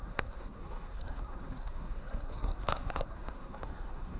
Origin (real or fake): fake